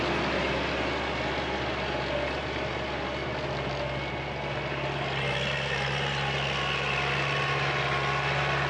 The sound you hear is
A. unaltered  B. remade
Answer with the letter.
A